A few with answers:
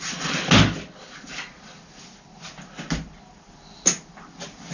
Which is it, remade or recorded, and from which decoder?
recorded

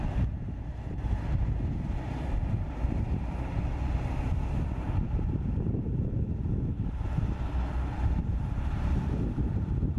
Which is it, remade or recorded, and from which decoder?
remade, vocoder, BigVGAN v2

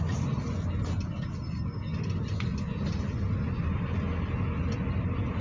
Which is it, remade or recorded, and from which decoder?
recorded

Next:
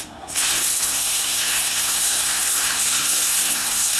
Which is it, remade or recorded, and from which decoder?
remade, codec, SNAC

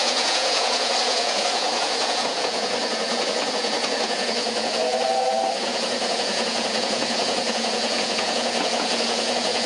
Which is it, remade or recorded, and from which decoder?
remade, vocoder, Vocos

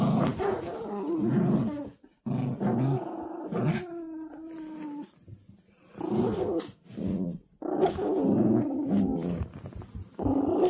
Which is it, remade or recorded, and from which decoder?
recorded